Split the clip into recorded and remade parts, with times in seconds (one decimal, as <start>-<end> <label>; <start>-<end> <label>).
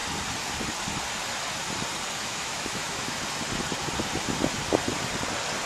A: 0.0-2.2 recorded; 2.2-3.2 remade; 3.2-5.7 recorded